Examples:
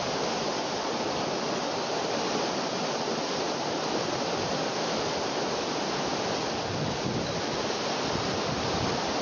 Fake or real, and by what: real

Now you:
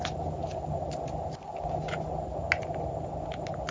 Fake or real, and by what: real